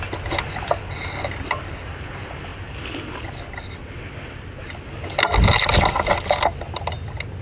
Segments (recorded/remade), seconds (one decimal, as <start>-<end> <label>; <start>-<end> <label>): 0.0-7.4 recorded